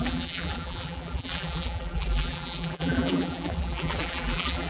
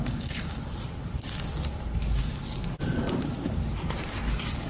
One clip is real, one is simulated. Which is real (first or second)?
second